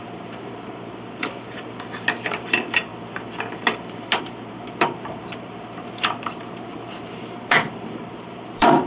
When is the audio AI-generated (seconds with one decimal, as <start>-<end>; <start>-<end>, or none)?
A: 0.0-2.9; 4.2-8.9